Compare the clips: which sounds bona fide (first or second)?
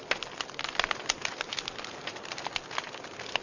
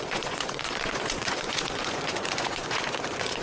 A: first